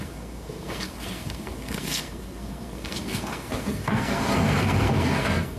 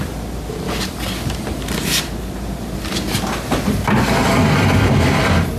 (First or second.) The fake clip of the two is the first